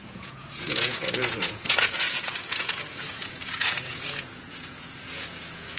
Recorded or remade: remade